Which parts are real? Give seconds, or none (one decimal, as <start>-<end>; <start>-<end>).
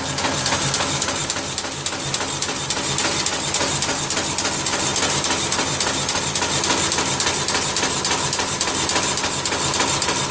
0.0-10.3